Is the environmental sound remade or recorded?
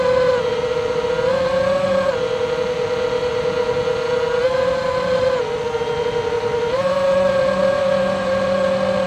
recorded